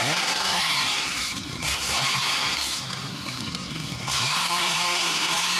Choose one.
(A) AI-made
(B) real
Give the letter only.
A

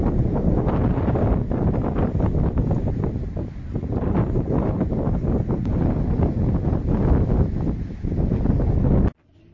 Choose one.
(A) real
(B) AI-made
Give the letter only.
A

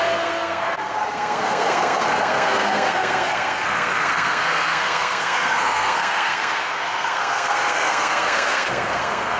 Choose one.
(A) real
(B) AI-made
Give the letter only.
B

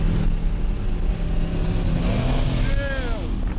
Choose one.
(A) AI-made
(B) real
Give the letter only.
B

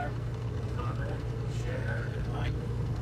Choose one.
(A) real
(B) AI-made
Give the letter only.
B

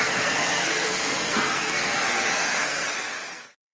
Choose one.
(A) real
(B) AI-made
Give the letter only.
B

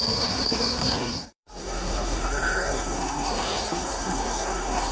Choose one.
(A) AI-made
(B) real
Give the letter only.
A